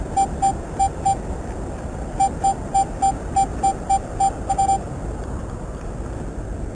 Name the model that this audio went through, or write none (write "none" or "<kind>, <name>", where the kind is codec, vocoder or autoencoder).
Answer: none